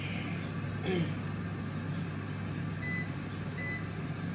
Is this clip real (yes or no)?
yes